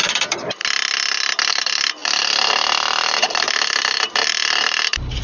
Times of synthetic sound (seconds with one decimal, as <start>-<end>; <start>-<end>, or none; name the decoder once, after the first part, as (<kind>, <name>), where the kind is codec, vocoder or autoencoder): 0.0-0.6 (vocoder, BigVGAN v2); 1.5-5.2